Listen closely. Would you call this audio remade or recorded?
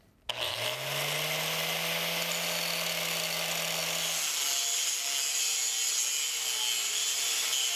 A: recorded